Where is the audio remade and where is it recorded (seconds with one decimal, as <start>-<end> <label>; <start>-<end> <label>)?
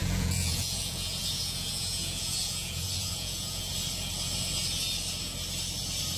0.0-3.7 remade; 3.7-6.2 recorded